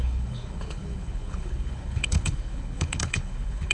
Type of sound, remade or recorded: remade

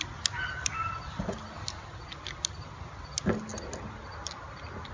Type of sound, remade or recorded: recorded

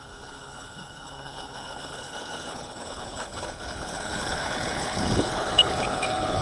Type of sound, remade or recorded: remade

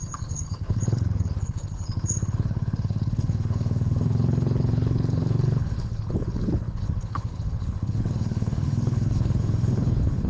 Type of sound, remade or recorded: remade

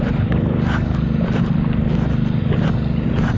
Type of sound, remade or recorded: recorded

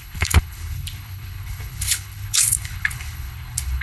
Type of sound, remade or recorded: remade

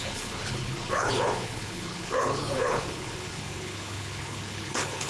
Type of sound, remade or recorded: remade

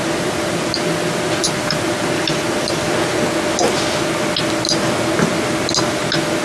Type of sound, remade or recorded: recorded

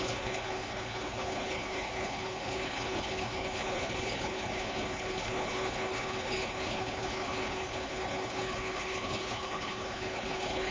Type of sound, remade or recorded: remade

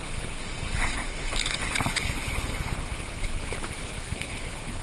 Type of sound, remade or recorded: remade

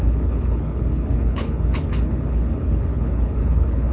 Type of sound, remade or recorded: remade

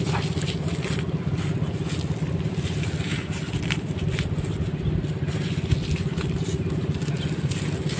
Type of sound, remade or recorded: recorded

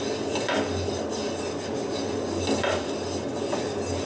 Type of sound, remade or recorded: recorded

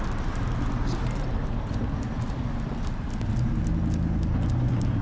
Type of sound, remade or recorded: recorded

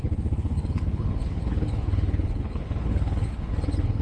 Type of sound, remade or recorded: remade